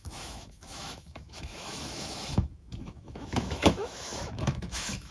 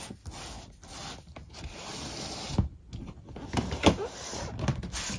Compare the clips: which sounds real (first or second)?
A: second